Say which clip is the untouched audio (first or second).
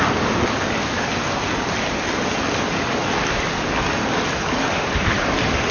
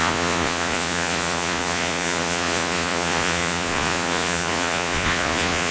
first